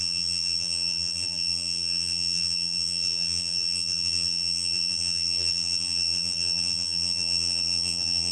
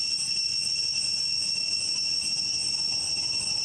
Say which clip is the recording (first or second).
second